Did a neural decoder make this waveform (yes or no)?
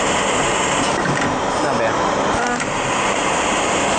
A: no